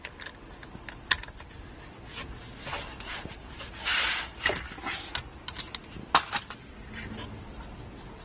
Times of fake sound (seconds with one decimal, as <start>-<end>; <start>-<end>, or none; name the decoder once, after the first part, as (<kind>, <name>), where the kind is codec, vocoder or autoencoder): 2.2-3.7 (vocoder, BigVGAN v2)

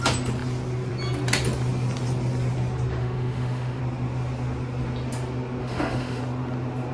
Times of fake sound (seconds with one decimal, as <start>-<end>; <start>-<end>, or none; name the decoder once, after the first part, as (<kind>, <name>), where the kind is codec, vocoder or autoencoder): 3.0-3.8 (autoencoder, DAC-VAE); 5.6-6.2

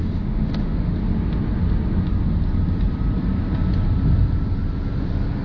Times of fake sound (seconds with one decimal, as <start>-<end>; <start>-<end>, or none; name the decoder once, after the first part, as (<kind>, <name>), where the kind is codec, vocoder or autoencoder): 0.0-0.9 (autoencoder, DAC-VAE)

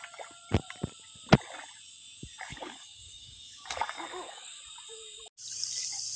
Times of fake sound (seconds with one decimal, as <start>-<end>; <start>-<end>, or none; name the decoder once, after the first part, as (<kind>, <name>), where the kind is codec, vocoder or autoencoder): 2.5-4.6 (codec, DAC)